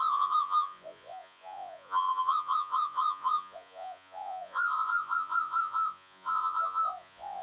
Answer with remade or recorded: remade